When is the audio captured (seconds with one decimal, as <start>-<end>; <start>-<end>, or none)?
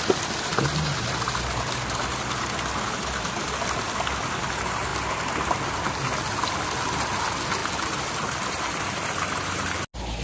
0.0-10.2